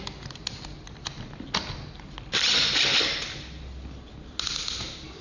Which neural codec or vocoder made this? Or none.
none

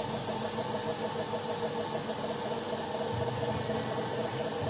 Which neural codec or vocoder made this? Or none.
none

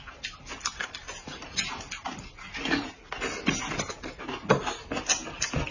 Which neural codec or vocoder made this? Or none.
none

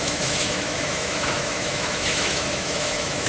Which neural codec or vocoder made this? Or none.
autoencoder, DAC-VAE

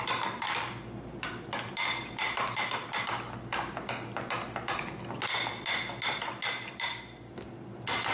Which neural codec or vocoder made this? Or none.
none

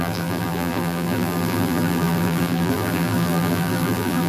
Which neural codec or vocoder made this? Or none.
vocoder, BigVGAN v2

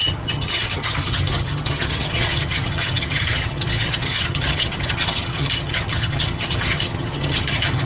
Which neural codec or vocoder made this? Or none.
vocoder, HiFi-GAN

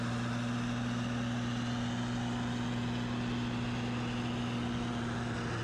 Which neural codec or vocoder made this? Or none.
none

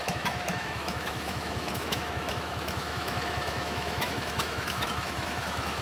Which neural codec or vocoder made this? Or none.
autoencoder, DAC-VAE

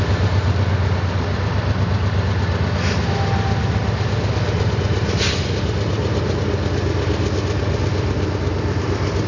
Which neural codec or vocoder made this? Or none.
none